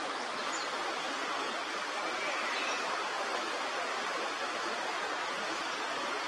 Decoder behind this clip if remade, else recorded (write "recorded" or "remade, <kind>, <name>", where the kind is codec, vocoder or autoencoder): recorded